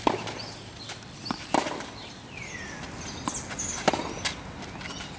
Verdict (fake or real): real